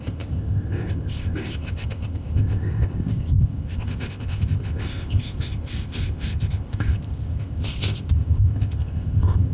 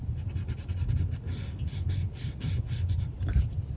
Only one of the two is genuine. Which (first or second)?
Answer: second